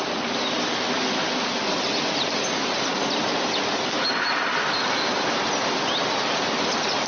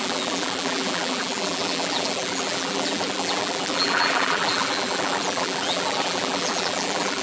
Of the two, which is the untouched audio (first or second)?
first